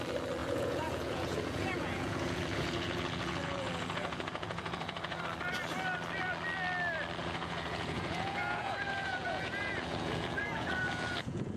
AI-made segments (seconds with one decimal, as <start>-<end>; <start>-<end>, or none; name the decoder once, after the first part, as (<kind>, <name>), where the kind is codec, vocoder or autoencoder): 0.4-5.2 (vocoder, Vocos); 7.2-11.6